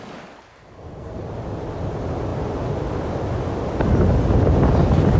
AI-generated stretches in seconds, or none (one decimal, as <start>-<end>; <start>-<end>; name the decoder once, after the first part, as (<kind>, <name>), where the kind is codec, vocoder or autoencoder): 0.5-1.2 (codec, SNAC)